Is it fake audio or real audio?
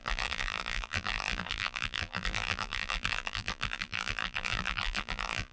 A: fake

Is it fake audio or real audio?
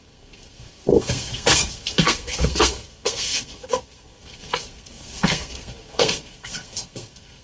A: fake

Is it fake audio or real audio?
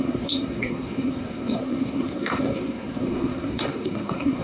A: fake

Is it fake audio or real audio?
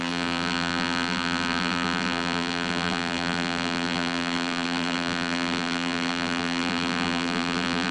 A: fake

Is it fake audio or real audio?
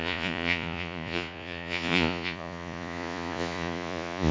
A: fake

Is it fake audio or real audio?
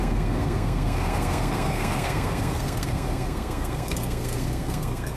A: fake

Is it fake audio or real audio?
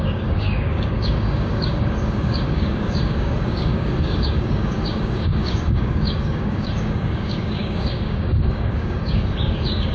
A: fake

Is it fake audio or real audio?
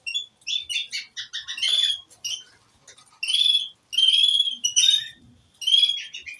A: real